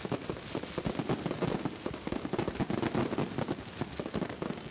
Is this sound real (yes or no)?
yes